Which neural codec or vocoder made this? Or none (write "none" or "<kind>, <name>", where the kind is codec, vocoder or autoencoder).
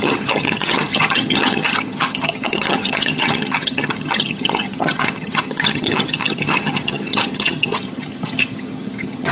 vocoder, HiFi-GAN